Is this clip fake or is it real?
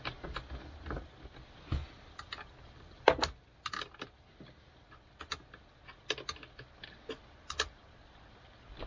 real